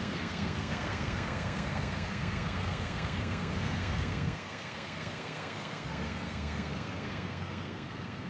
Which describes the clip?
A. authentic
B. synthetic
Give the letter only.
B